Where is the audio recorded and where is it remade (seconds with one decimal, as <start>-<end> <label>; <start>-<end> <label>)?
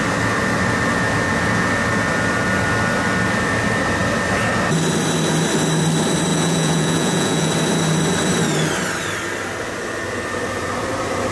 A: 0.0-6.3 recorded; 6.3-7.5 remade; 7.5-11.3 recorded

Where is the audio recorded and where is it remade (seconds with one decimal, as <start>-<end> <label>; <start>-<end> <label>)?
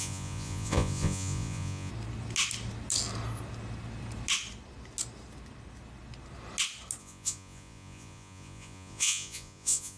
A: 0.0-1.9 remade; 1.9-7.0 recorded; 7.0-10.0 remade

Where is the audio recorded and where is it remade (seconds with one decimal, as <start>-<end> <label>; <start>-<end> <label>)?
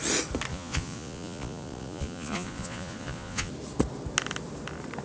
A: 0.0-0.5 recorded; 0.5-3.5 remade; 3.5-5.0 recorded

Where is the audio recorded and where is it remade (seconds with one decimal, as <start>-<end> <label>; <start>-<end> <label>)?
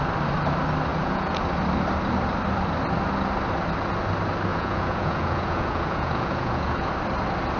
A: 0.0-0.9 recorded; 0.9-1.4 remade; 1.4-4.5 recorded; 4.5-6.9 remade; 6.9-7.6 recorded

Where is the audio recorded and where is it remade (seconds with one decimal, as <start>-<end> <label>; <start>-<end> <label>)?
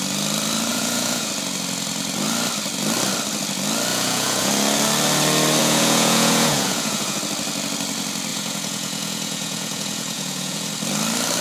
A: 0.0-0.7 recorded; 0.7-1.3 remade; 1.3-3.9 recorded; 3.9-4.5 remade; 4.5-5.6 recorded; 5.6-7.2 remade; 7.2-8.3 recorded; 8.3-10.7 remade; 10.7-11.4 recorded